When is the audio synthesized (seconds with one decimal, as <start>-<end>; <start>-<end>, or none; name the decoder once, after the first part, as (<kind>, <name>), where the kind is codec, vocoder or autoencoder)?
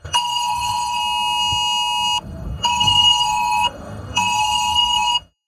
0.0-1.0 (codec, SNAC); 2.2-5.5